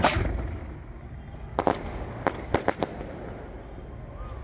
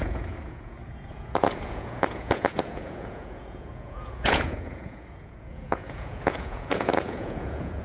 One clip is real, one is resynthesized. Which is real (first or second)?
first